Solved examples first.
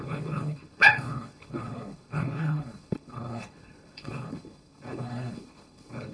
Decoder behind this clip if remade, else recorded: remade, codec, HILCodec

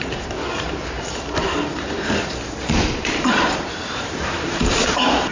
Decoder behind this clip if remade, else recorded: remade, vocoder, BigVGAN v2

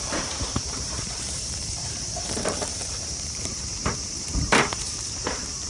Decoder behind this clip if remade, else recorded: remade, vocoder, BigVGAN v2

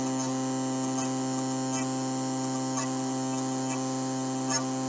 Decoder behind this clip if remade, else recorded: recorded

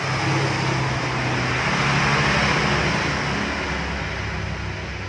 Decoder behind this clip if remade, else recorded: recorded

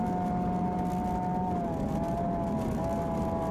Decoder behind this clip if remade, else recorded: recorded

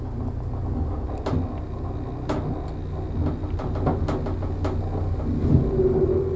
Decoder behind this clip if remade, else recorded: recorded